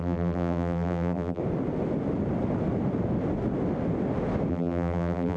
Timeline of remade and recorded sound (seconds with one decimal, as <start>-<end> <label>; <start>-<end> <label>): 0.0-1.4 remade; 1.4-4.5 recorded; 4.5-5.4 remade